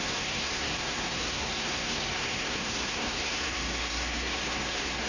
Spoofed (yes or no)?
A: yes